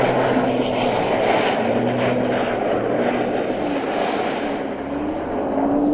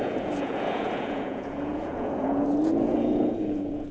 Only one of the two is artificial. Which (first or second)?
second